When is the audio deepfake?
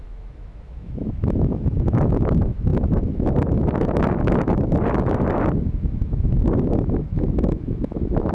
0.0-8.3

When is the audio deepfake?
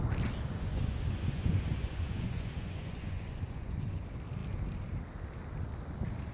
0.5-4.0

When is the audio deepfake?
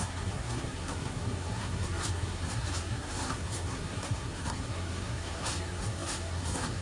0.0-6.8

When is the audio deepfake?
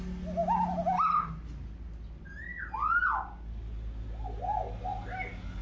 none